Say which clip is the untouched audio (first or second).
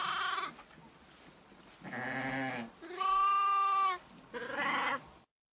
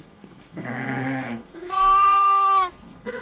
first